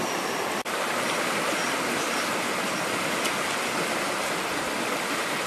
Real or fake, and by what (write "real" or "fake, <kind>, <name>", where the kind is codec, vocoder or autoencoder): real